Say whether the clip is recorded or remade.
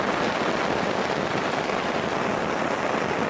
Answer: recorded